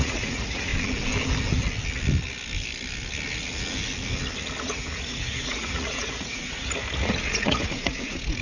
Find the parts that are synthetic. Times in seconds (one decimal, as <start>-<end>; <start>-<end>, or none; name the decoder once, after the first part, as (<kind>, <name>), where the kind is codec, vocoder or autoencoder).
0.0-0.7 (vocoder, Vocos); 4.6-8.4